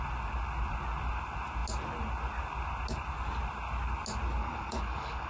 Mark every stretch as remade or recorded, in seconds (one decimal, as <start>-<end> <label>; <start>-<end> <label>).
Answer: 0.0-4.4 recorded; 4.4-5.3 remade